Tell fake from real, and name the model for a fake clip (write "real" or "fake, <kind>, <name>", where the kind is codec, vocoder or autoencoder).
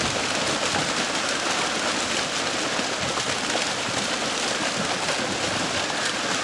real